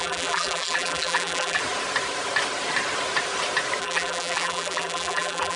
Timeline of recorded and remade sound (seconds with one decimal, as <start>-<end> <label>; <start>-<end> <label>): 0.0-1.6 remade; 1.6-3.8 recorded; 3.8-5.6 remade